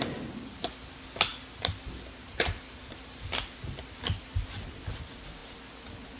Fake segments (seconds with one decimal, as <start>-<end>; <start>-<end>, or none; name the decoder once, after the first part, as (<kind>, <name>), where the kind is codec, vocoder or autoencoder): none